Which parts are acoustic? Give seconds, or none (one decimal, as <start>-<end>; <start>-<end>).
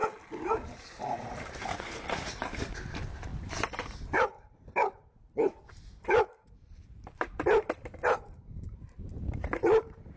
0.0-0.8